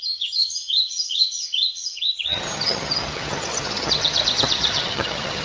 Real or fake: fake